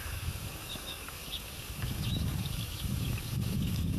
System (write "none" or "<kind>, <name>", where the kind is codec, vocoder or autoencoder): codec, DAC